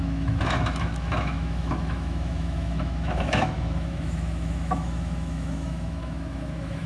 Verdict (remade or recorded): remade